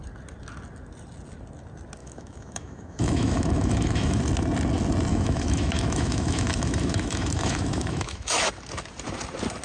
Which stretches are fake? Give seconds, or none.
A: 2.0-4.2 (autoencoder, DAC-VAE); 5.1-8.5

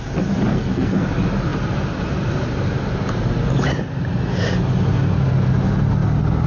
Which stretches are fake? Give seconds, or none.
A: 0.5-1.1 (codec, SNAC)

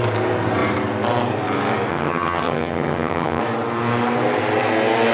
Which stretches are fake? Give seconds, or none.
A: 1.9-3.4 (vocoder, HiFi-GAN)